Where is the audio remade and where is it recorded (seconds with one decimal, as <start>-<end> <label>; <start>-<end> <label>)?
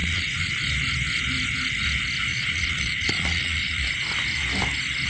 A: 0.0-0.5 remade; 0.5-2.3 recorded; 2.3-3.9 remade; 3.9-5.1 recorded